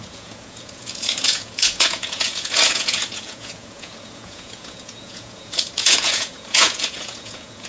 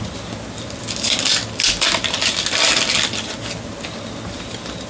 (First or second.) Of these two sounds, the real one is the second